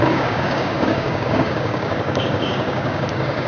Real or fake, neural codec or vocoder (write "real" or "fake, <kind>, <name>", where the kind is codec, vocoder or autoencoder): fake, codec, DAC